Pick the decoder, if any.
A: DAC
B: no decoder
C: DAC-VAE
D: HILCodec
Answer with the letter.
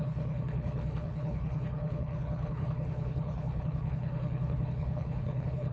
D